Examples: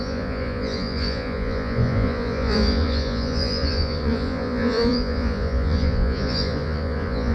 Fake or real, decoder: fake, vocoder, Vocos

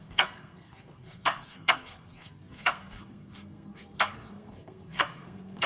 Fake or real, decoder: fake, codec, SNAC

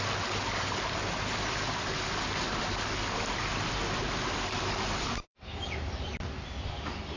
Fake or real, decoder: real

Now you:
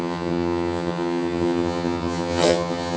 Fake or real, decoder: fake, vocoder, HiFi-GAN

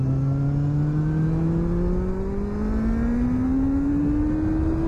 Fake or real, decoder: real